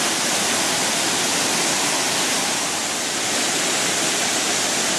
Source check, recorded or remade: recorded